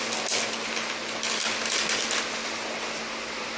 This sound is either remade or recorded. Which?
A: recorded